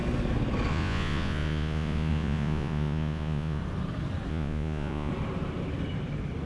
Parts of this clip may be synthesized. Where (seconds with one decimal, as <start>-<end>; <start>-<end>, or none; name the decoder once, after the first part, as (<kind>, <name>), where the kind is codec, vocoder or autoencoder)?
0.7-3.6 (vocoder, Vocos); 4.3-5.1